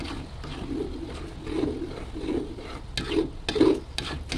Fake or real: real